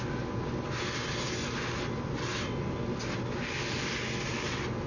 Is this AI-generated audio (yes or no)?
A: no